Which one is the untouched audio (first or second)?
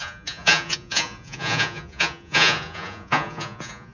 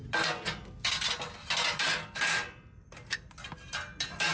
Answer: second